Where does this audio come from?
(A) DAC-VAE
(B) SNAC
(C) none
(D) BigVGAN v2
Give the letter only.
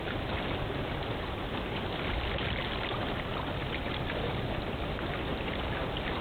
C